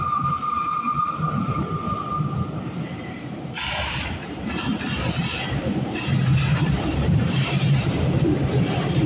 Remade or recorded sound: remade